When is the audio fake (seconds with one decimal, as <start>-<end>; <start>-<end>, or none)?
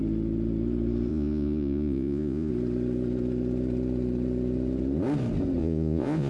1.1-2.5; 5.6-6.3